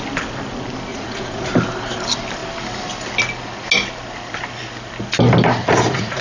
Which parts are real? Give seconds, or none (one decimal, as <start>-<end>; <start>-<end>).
0.0-0.9; 1.5-5.6